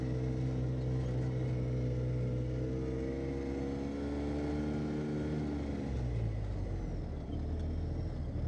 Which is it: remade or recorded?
recorded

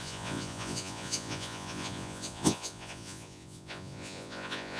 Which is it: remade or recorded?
remade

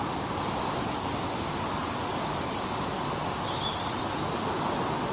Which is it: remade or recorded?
recorded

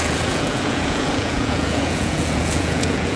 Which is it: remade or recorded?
remade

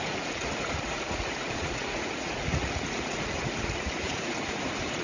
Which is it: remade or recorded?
remade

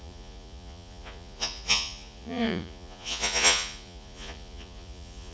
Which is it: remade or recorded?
remade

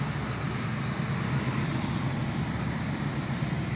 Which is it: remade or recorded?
recorded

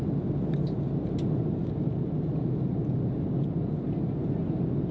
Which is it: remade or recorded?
recorded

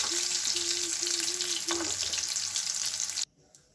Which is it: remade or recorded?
recorded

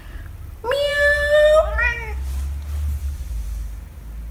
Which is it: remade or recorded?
recorded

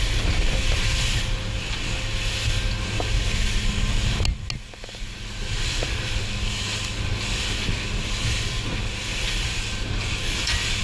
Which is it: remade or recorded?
recorded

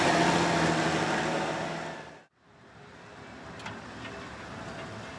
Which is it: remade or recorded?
recorded